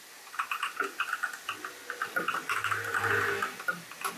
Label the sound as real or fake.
real